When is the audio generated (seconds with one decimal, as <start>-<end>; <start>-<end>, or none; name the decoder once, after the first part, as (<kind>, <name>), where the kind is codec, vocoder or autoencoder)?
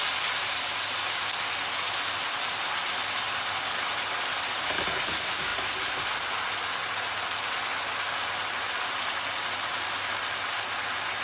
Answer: none